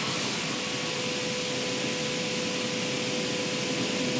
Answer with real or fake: real